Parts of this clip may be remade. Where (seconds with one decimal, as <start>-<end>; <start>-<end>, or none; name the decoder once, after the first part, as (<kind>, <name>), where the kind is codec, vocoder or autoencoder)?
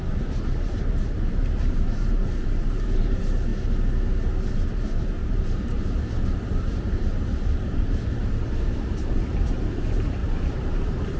0.0-3.5 (vocoder, BigVGAN v2); 4.5-11.2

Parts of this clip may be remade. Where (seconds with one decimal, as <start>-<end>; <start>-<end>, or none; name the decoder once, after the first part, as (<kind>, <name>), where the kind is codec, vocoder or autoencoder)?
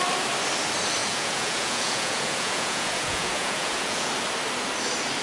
1.0-4.1 (vocoder, Vocos)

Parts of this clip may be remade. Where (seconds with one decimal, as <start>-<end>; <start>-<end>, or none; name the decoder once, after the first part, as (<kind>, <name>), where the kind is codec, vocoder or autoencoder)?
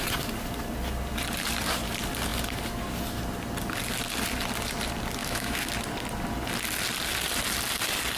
5.2-5.7 (autoencoder, DAC-VAE)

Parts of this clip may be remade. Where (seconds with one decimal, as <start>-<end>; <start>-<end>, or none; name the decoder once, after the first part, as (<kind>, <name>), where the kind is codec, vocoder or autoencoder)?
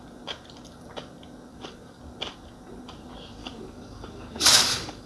1.5-2.0 (codec, DAC); 3.4-5.1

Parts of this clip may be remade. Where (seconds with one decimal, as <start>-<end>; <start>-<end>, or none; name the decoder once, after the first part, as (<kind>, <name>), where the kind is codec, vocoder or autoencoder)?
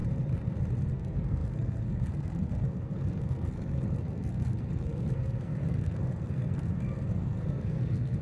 0.8-8.2 (codec, SNAC)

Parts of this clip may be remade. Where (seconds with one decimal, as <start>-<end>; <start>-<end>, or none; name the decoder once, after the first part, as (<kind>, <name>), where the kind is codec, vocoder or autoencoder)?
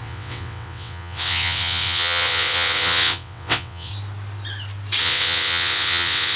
0.0-3.9 (vocoder, WaveNeXt); 5.0-6.4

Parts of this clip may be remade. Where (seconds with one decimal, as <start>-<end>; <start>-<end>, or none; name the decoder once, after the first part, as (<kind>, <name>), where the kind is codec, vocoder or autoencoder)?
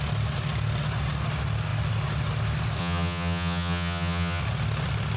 2.8-4.4 (vocoder, HiFi-GAN)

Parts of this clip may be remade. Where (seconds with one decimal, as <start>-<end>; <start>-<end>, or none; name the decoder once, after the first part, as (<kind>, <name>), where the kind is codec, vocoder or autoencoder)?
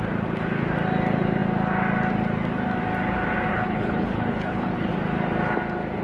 3.5-4.9 (codec, HILCodec)